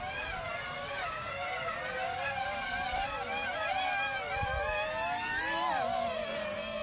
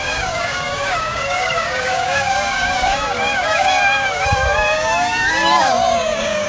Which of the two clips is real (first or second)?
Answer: first